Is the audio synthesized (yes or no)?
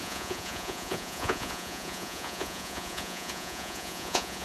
yes